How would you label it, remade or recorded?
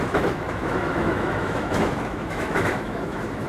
remade